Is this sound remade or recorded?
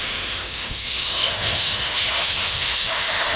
remade